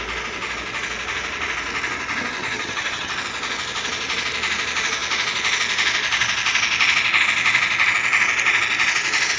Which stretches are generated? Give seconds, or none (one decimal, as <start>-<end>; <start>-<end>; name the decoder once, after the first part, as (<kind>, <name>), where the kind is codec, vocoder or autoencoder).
2.4-3.1 (vocoder, HiFi-GAN)